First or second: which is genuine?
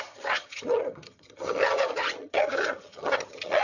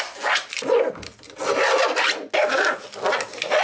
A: second